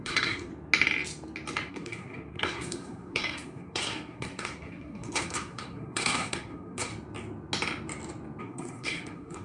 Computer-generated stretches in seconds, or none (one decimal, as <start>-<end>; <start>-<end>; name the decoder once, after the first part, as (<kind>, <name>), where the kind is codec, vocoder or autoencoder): 0.0-0.5 (codec, SNAC); 1.7-6.9; 8.4-9.4